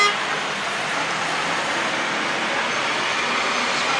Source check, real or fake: real